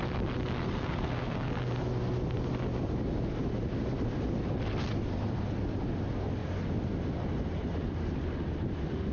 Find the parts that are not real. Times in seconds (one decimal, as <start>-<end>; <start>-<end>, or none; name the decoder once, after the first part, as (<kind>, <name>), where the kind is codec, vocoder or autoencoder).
0.6-1.5 (codec, SNAC)